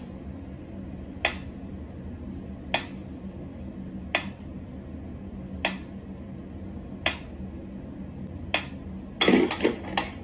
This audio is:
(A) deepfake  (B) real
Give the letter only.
B